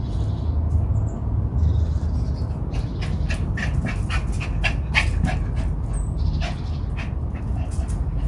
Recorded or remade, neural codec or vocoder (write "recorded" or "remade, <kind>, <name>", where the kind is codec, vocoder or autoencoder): recorded